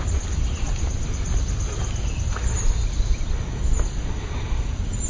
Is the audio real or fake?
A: real